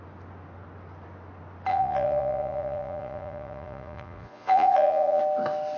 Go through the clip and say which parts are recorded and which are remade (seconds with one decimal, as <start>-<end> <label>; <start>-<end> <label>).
0.0-1.7 recorded; 1.7-5.2 remade; 5.2-5.8 recorded